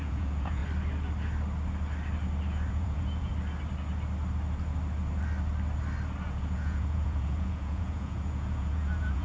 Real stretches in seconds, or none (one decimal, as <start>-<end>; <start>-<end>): 0.6-2.7; 3.3-6.2